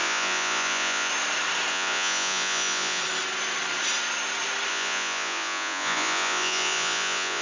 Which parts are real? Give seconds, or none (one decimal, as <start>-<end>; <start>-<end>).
1.1-1.7; 3.0-4.7